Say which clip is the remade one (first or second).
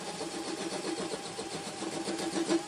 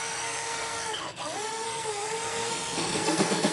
second